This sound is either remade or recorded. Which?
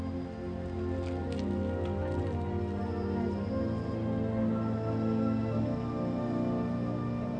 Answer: recorded